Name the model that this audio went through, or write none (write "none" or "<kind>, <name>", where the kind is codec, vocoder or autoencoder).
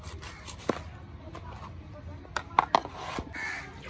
none